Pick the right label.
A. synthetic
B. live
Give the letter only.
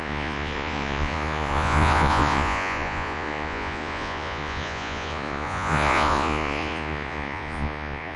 A